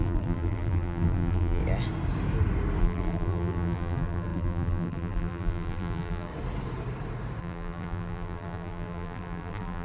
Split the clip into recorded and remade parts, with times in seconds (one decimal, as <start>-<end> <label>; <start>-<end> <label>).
0.0-1.6 remade; 1.6-2.8 recorded; 2.8-6.3 remade; 6.3-7.4 recorded; 7.4-9.8 remade